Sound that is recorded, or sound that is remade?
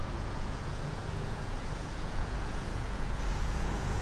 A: remade